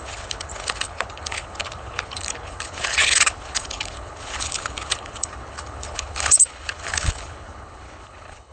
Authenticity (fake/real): fake